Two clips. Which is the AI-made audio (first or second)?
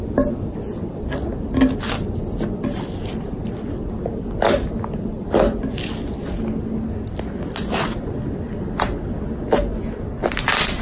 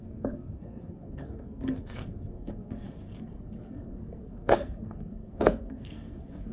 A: second